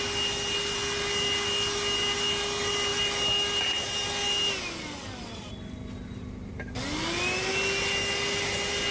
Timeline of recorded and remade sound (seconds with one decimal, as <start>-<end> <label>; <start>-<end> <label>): 0.0-8.9 recorded